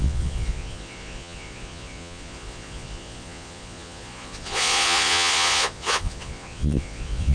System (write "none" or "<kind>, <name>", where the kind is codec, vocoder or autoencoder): vocoder, Vocos